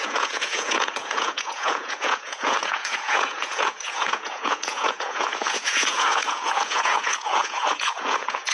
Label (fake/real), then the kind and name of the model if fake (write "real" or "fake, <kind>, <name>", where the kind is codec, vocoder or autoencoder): fake, vocoder, Vocos